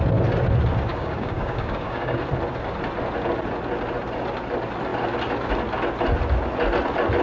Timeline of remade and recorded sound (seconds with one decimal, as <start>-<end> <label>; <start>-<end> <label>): 0.0-0.9 recorded; 0.9-2.2 remade; 2.2-7.2 recorded